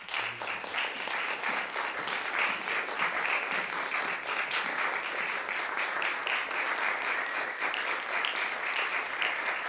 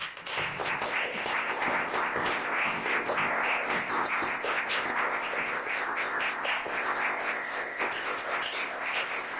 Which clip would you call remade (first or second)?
second